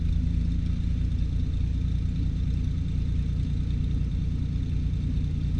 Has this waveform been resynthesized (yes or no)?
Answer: no